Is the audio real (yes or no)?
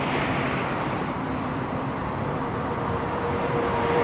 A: no